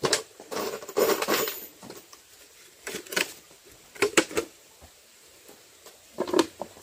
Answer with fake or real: fake